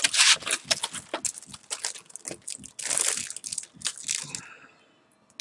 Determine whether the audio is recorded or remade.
recorded